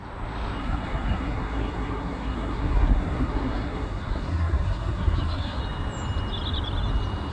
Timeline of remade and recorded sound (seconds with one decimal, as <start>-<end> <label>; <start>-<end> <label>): 0.0-0.6 recorded; 0.6-5.6 remade; 5.6-7.3 recorded